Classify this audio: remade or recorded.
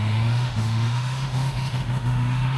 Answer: remade